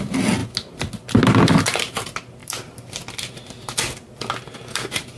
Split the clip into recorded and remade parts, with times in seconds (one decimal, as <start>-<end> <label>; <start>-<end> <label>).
0.0-5.2 recorded